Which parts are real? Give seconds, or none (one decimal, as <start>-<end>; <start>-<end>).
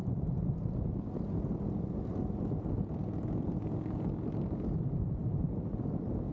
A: 0.0-6.3